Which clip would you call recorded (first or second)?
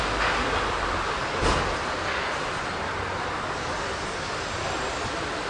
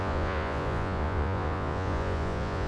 first